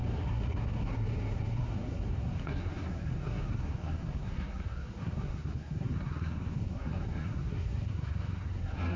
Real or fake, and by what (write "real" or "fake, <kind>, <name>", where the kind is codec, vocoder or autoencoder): fake, codec, SNAC